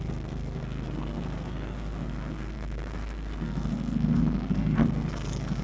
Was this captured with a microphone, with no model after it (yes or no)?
no